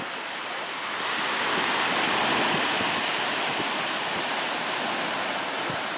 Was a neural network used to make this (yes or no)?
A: no